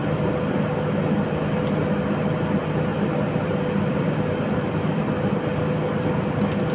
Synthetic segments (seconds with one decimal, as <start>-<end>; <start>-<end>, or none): 2.9-5.1

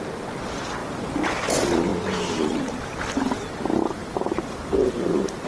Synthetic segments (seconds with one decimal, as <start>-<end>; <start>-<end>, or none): 4.0-4.7